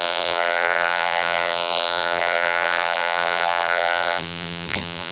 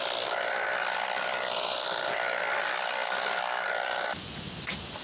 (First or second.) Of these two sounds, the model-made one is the first